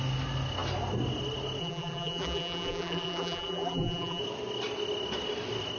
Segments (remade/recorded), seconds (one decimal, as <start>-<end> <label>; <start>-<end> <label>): 0.0-1.6 recorded; 1.6-4.2 remade; 4.2-5.8 recorded